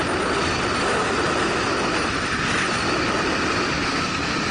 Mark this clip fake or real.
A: real